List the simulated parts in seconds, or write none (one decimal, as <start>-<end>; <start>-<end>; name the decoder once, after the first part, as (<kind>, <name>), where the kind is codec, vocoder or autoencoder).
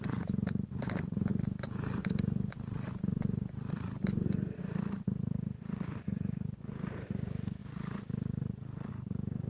0.0-1.3 (vocoder, BigVGAN v2); 4.6-9.5